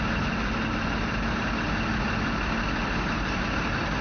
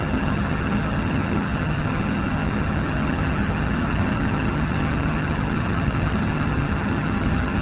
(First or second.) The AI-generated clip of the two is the second